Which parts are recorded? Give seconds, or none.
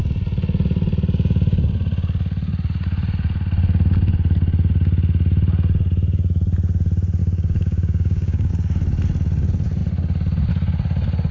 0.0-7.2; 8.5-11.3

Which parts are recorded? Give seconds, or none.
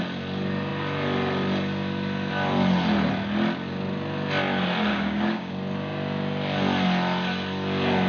0.0-4.9; 5.5-8.1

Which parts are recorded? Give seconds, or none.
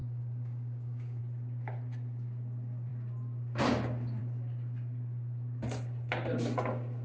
1.2-7.0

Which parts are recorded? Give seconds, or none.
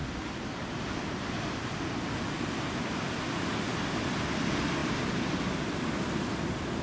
0.0-6.8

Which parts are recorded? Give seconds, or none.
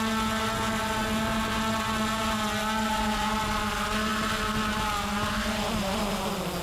0.0-6.6